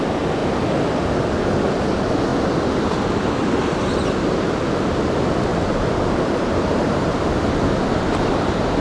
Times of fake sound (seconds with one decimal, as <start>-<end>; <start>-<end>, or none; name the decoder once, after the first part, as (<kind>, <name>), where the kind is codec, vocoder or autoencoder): 5.5-7.2 (vocoder, BigVGAN v2)